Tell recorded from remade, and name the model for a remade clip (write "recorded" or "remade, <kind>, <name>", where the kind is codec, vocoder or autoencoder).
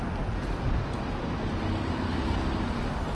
recorded